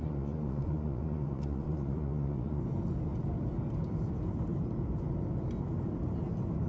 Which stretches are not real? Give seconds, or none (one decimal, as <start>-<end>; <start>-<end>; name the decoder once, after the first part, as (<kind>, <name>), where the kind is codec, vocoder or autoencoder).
0.0-2.6 (vocoder, Vocos)